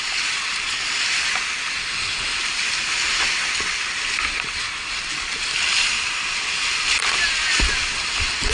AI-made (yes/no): no